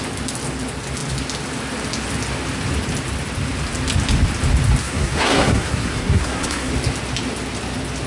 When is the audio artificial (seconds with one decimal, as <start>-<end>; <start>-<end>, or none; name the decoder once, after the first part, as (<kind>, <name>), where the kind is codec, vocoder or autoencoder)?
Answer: 4.8-6.7 (codec, SNAC)